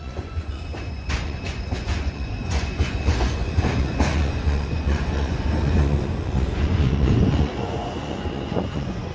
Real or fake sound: fake